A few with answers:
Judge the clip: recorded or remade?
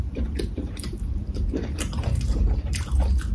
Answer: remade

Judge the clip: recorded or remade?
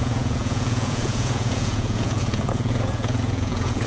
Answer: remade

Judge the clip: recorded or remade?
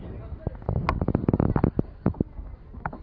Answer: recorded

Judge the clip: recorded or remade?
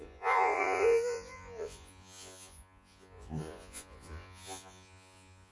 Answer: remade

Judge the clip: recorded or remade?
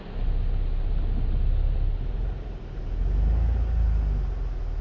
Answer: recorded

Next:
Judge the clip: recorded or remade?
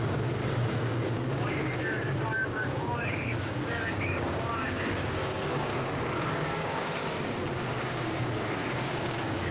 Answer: remade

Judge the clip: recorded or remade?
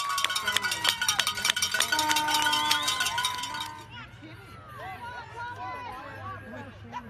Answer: recorded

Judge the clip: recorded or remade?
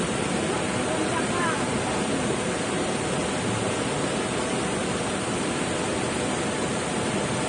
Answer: recorded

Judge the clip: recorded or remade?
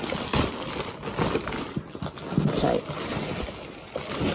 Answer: recorded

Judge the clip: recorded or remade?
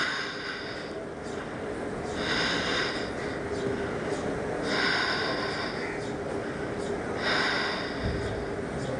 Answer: recorded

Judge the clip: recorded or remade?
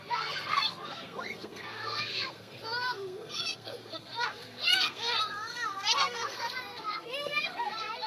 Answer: remade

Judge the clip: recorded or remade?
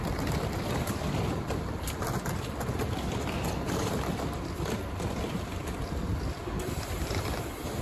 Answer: remade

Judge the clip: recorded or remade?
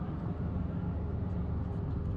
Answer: recorded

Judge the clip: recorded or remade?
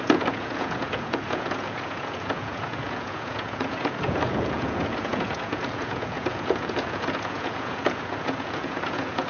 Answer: remade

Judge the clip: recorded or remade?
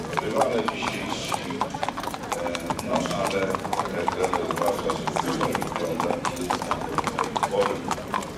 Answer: recorded